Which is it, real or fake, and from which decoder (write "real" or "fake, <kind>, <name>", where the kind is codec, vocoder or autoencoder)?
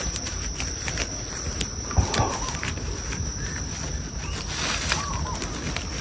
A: real